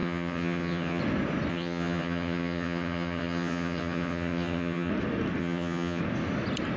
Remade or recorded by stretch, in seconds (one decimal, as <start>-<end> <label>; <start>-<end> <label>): 0.0-1.0 remade; 1.0-1.5 recorded; 1.5-4.9 remade; 4.9-5.4 recorded; 5.4-6.0 remade; 6.0-6.8 recorded